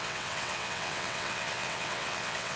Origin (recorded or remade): remade